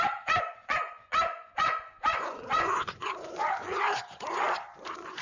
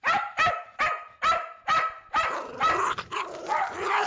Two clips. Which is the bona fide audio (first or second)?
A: second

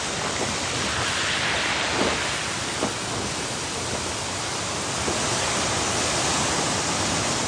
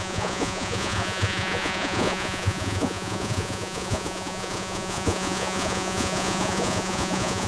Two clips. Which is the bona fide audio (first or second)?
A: first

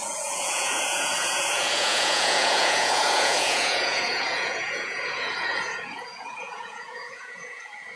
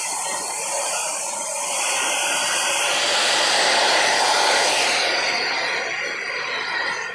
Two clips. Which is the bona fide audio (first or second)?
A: second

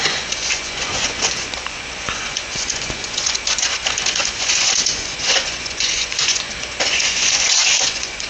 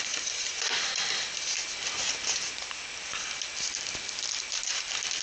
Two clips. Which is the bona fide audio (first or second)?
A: second